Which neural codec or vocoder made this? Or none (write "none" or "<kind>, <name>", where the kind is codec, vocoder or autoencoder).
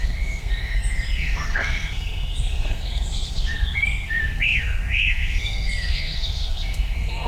codec, SNAC